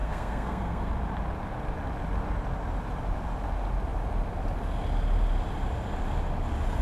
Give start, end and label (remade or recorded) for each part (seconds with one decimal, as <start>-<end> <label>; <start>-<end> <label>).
0.0-0.9 remade; 0.9-6.8 recorded